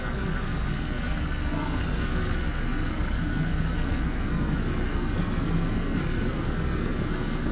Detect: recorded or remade remade